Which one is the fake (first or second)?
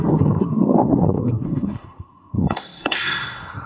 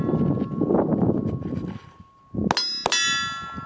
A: first